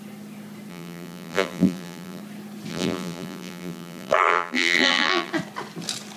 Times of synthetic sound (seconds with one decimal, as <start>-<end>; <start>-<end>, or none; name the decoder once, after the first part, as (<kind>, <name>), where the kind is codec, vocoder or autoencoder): 0.7-2.2 (vocoder, BigVGAN v2); 2.7-5.3

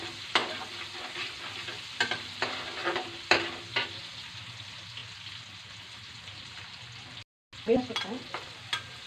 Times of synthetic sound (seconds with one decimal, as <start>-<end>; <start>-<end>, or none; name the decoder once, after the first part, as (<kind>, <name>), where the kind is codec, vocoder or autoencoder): none

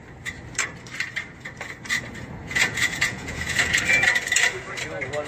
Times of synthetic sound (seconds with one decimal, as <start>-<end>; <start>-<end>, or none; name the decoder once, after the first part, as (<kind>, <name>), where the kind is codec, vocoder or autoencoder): 2.4-3.8 (vocoder, Vocos)

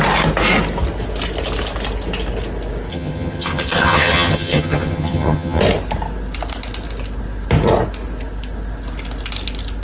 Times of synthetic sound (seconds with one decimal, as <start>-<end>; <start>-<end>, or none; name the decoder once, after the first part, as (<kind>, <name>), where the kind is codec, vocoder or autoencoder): 2.9-5.6 (vocoder, HiFi-GAN)

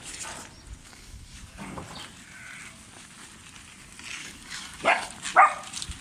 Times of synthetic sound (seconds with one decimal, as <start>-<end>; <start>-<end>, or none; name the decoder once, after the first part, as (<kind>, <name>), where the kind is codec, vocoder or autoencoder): 0.8-1.8 (codec, DAC); 4.2-5.1

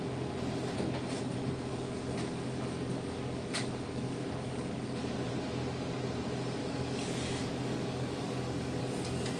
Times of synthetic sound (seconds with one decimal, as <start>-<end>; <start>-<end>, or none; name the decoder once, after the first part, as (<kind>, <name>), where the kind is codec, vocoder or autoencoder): 1.7-5.3 (codec, DAC); 6.6-8.8

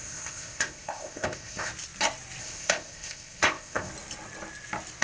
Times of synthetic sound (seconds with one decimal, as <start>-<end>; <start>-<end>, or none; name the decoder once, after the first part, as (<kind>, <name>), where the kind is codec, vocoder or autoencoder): 0.0-1.7 (codec, ZipCodec); 2.4-3.9